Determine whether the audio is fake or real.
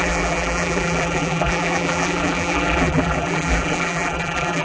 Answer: fake